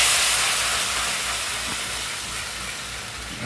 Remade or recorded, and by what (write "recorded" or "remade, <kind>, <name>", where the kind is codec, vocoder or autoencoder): recorded